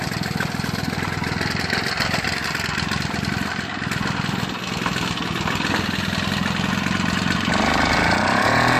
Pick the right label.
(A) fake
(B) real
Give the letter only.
B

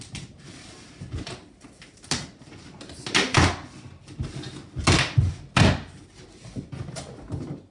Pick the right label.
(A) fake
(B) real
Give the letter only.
B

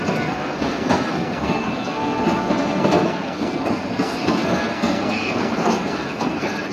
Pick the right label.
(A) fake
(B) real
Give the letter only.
A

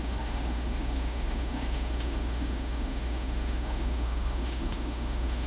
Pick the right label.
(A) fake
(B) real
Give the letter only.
A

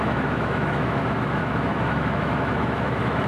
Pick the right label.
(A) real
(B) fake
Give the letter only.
B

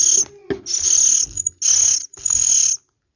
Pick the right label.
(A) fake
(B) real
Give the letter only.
B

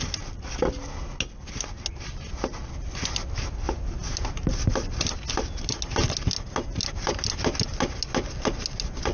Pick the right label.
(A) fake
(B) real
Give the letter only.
B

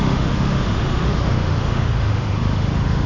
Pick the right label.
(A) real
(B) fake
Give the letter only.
B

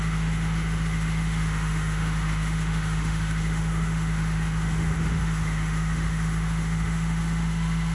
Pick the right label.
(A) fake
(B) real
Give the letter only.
A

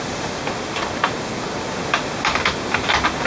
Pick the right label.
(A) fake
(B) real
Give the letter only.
B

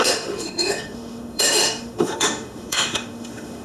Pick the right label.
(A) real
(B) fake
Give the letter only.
B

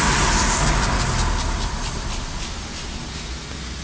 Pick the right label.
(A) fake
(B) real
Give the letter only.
B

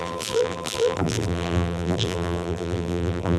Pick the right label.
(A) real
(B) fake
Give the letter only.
B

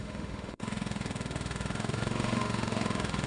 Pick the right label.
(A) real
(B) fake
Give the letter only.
B